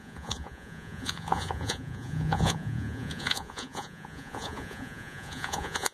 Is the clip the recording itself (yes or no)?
no